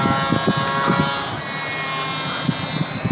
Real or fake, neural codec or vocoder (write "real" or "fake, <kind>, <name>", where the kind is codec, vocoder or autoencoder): real